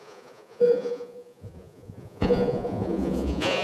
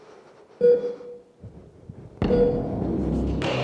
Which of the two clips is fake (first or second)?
first